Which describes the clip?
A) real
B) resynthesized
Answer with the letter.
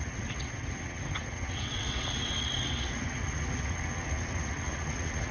B